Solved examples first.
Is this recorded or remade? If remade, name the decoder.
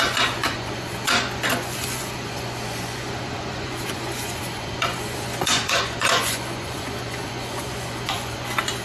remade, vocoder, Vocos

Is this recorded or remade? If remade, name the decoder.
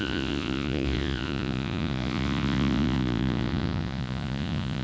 remade, vocoder, Vocos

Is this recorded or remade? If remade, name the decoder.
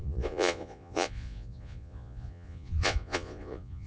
remade, vocoder, Vocos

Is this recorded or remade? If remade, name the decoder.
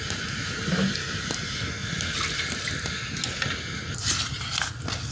recorded